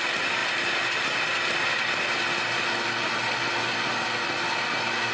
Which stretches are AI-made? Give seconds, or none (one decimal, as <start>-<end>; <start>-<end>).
none